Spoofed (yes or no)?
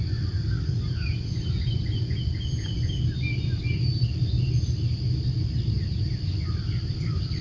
no